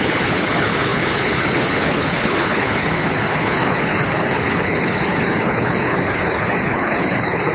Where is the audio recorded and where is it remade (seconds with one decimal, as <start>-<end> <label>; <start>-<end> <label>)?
0.0-7.5 remade